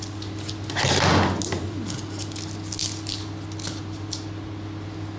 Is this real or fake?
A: real